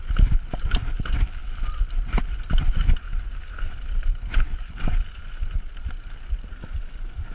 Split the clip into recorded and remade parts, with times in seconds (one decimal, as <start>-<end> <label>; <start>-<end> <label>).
0.0-7.3 recorded